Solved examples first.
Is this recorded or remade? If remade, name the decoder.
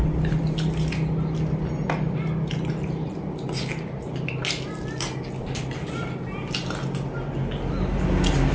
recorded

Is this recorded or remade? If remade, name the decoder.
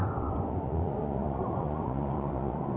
remade, vocoder, Vocos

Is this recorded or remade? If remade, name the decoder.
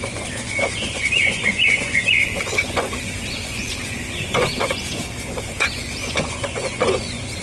remade, vocoder, Vocos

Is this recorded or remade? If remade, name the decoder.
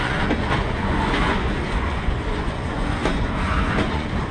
remade, vocoder, Vocos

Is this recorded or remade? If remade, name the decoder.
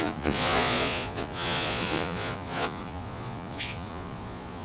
remade, vocoder, Vocos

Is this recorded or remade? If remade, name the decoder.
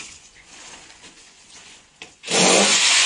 remade, vocoder, Vocos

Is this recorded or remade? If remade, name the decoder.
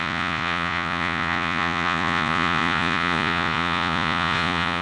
remade, vocoder, Vocos